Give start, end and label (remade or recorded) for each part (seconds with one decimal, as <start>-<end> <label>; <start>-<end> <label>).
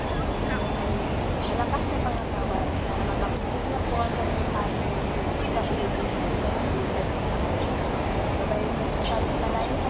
0.0-2.4 recorded; 2.4-2.9 remade; 2.9-3.6 recorded; 3.6-4.8 remade; 4.8-6.1 recorded; 6.1-7.6 remade; 7.6-9.9 recorded